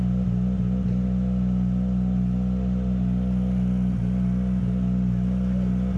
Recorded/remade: recorded